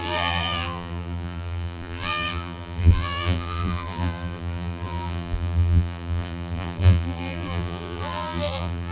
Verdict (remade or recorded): remade